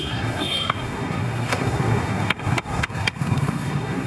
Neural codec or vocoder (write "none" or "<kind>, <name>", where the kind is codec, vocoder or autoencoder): codec, SNAC